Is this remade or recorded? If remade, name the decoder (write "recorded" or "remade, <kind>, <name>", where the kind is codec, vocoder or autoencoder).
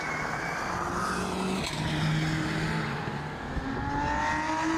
recorded